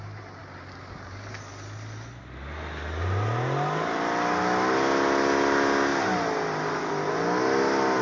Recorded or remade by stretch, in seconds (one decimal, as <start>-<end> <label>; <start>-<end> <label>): 0.0-8.0 recorded